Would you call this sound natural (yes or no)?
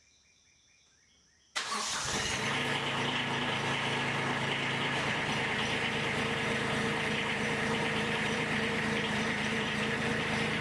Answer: no